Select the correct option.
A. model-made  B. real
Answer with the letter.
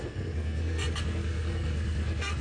A